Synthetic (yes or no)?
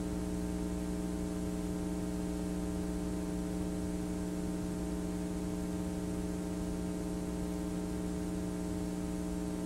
no